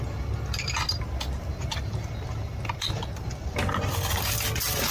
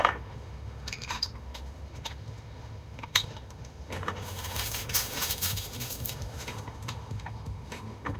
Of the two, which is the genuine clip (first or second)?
first